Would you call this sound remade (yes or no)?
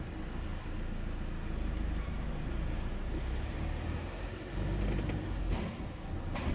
no